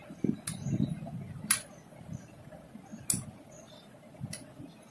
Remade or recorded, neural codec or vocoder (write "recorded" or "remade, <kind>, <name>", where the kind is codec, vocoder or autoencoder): recorded